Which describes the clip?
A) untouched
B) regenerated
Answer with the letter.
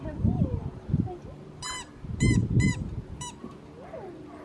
B